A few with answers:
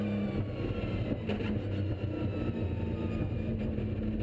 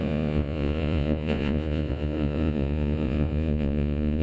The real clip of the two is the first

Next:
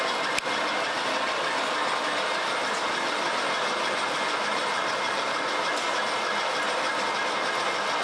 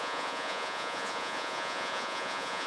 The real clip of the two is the first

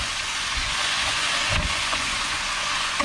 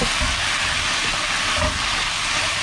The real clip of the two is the second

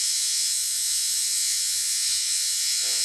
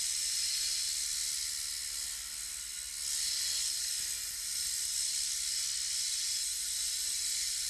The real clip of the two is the second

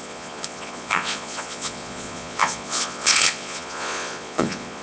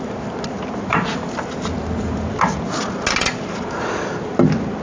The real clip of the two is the second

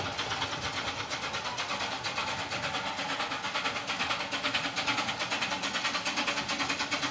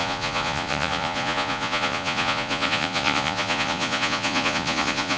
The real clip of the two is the first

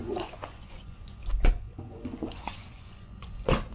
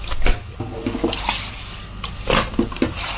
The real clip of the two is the second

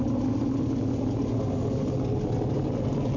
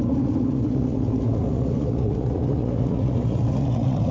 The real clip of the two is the first